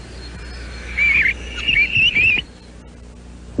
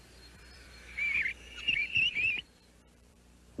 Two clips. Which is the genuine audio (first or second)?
first